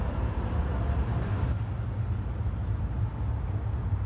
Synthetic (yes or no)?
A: no